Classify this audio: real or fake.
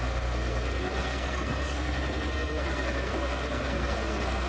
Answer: fake